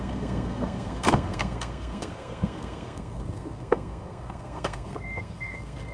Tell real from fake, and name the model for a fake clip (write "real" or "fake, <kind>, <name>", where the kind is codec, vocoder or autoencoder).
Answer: fake, codec, SNAC